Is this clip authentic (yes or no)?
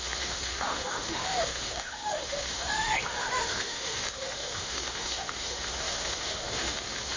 no